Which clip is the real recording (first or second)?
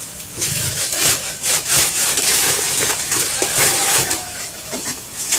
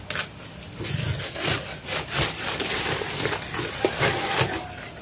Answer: second